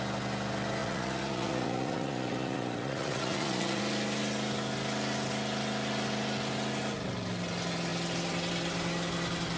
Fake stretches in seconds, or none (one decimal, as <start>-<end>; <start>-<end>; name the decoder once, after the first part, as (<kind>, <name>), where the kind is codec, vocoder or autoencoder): 0.8-3.8 (vocoder, Vocos)